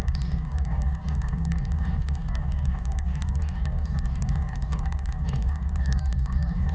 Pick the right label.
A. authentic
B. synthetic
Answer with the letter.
B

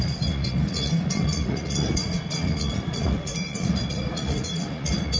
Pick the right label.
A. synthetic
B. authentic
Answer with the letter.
A